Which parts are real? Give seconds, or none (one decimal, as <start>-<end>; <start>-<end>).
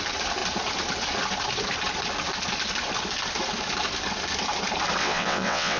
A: 0.0-5.0